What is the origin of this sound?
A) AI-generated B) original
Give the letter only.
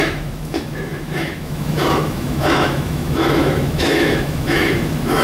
A